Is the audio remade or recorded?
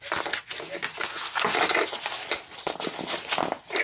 recorded